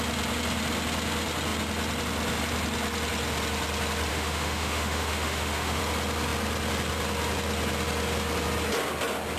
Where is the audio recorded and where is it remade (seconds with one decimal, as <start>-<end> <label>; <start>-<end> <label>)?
0.0-4.1 recorded; 4.1-5.8 remade; 5.8-9.4 recorded

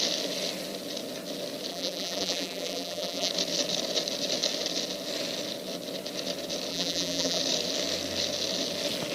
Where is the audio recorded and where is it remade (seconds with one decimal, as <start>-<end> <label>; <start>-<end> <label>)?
0.0-1.7 recorded; 1.7-3.3 remade; 3.3-6.7 recorded; 6.7-7.4 remade; 7.4-9.1 recorded

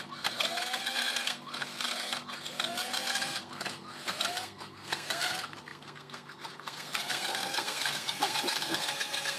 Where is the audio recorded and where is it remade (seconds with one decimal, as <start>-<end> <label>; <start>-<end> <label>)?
0.0-9.4 remade

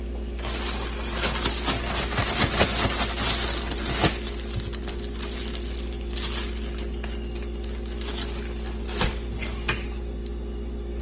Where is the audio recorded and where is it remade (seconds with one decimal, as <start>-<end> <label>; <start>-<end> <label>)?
0.0-11.0 recorded

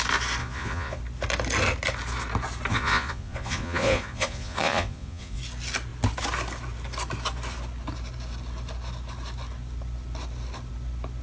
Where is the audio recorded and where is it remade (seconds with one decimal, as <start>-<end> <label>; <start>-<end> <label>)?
0.0-0.4 recorded; 0.4-1.0 remade; 1.0-2.7 recorded; 2.7-5.4 remade; 5.4-11.2 recorded

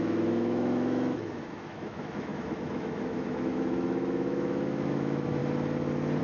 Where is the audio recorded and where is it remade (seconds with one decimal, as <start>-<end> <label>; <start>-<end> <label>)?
0.0-5.4 remade; 5.4-6.2 recorded

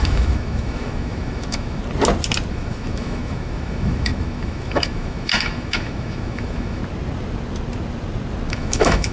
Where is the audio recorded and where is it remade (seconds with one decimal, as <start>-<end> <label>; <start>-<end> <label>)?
0.0-1.8 remade; 1.8-2.5 recorded; 2.5-6.8 remade; 6.8-8.5 recorded; 8.5-9.1 remade